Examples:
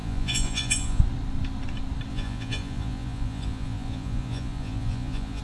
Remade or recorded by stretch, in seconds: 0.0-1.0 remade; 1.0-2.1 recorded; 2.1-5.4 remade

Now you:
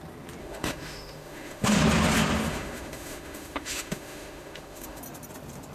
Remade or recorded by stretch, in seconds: 0.0-0.4 recorded; 0.4-1.8 remade; 1.8-2.5 recorded; 2.5-5.0 remade; 5.0-5.7 recorded

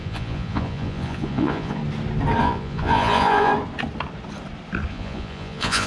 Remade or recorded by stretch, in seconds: 0.0-1.8 remade; 1.8-2.4 recorded; 2.4-3.5 remade; 3.5-4.9 recorded; 4.9-5.9 remade

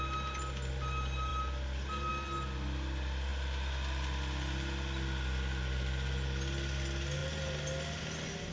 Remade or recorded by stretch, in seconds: 0.0-8.5 recorded

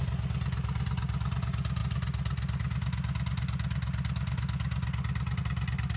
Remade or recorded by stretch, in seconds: 0.0-6.0 recorded

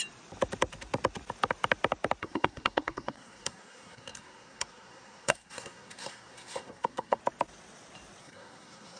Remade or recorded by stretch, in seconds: 0.0-2.2 recorded; 2.2-7.2 remade; 7.2-8.2 recorded; 8.2-9.0 remade

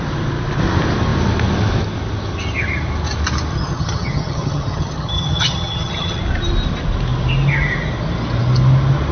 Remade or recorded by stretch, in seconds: 0.0-3.5 recorded; 3.5-6.2 remade; 6.2-9.1 recorded

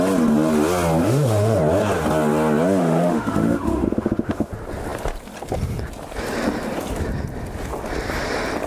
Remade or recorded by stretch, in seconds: 0.0-1.0 recorded; 1.0-1.6 remade; 1.6-2.8 recorded; 2.8-4.5 remade; 4.5-8.7 recorded